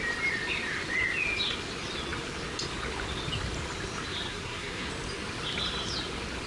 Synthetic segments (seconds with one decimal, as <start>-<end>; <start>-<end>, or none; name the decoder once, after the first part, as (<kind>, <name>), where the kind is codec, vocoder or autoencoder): 4.3-4.9 (codec, SNAC)